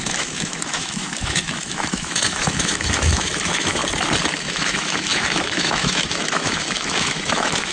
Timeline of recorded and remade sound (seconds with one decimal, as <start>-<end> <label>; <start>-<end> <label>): 0.0-3.8 remade; 3.8-4.4 recorded; 4.4-7.7 remade